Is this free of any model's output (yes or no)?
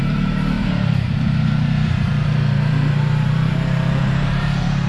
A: no